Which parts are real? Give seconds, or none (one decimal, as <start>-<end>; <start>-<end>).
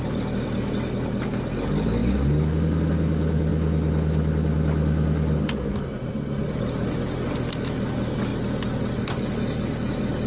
0.0-10.3